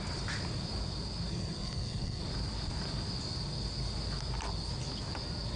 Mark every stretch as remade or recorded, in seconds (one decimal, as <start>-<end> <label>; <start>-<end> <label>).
0.0-1.3 recorded; 1.3-2.2 remade; 2.2-5.6 recorded